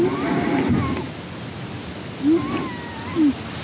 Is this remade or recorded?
recorded